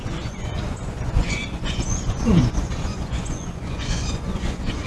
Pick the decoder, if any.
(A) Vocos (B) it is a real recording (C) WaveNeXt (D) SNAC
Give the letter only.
A